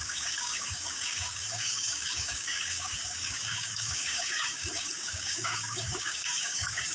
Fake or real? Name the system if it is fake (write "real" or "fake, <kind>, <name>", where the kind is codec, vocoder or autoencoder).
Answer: fake, codec, DAC